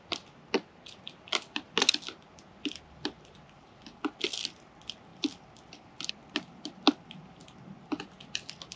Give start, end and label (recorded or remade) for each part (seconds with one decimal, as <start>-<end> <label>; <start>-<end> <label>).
0.0-8.8 recorded